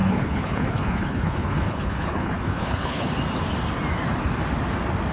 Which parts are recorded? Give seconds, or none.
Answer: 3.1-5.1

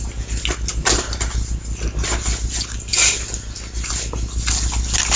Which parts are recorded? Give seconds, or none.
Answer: 0.0-5.2